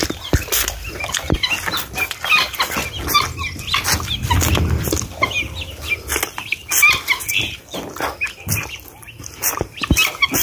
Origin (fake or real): real